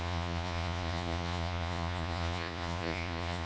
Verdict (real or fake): fake